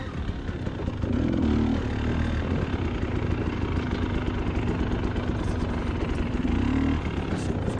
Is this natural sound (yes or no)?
yes